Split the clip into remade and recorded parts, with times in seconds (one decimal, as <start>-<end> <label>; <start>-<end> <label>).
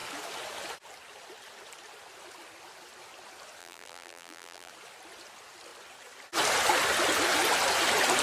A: 0.0-3.6 recorded; 3.6-4.7 remade; 4.7-8.2 recorded